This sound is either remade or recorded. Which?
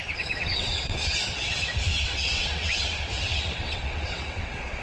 remade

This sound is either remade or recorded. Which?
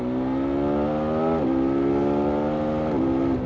recorded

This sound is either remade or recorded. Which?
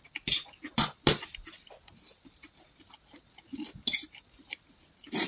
recorded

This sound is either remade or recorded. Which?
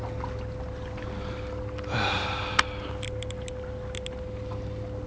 recorded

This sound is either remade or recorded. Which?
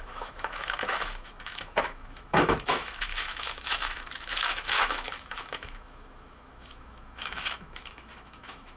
remade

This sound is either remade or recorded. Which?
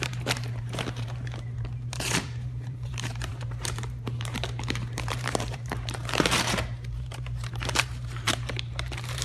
remade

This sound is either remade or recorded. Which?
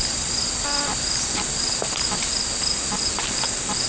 recorded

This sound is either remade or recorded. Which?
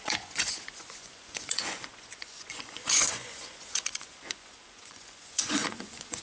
remade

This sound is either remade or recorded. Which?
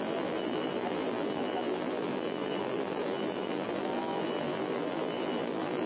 remade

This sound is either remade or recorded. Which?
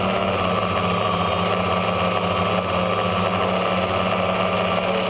recorded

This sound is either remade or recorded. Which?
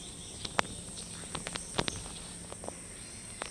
recorded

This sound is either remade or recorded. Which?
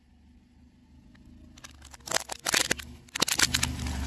recorded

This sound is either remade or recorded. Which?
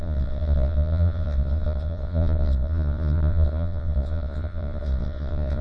remade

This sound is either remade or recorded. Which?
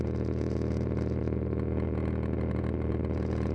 remade